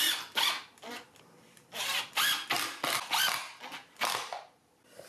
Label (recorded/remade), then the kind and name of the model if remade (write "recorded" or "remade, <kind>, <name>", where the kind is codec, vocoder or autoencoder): recorded